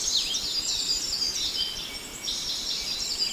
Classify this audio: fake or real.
real